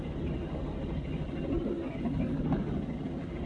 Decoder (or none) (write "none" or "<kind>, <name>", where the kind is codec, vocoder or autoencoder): none